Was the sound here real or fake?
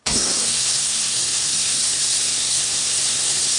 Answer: fake